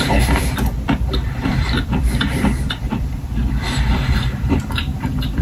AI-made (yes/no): yes